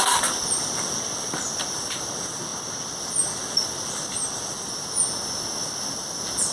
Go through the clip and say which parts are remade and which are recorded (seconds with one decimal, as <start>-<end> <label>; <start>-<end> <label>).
0.0-2.5 remade; 2.5-5.9 recorded; 5.9-6.5 remade